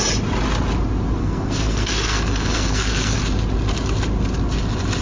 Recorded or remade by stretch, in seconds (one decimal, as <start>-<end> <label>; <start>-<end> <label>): 0.0-1.2 recorded; 1.2-3.2 remade; 3.2-5.0 recorded